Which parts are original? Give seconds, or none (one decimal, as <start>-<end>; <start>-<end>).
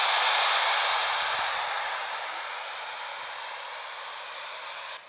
0.0-5.1